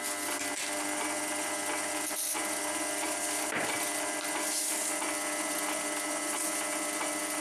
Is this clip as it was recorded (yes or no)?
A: yes